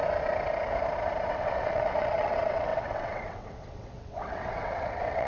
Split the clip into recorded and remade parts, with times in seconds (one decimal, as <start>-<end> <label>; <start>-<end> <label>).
0.0-1.3 recorded; 1.3-5.3 remade